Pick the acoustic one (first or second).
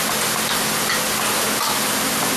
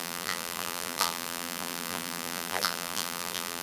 first